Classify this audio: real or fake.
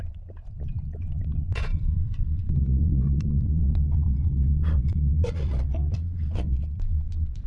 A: fake